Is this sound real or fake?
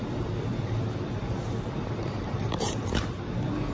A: fake